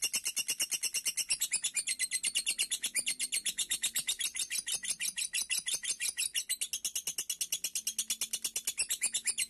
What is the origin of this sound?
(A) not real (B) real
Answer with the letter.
B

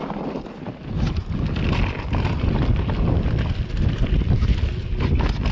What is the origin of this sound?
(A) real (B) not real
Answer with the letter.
A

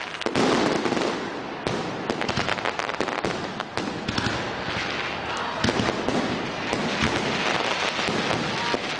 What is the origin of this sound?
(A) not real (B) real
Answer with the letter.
B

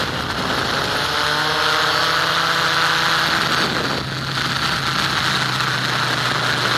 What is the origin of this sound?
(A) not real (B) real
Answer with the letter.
B